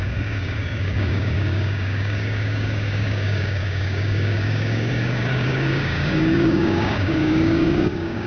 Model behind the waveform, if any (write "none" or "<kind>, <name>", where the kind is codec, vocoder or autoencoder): codec, DAC